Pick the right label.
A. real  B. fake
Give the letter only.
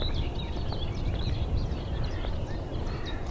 A